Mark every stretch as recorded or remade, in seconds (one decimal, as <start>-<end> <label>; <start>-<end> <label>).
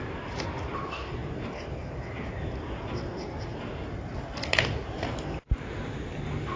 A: 0.0-6.6 recorded